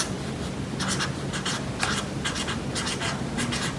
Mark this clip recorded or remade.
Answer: recorded